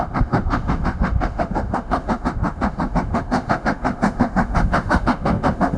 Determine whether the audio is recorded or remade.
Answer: remade